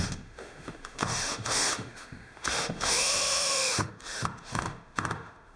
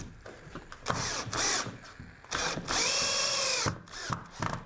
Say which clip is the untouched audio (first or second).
second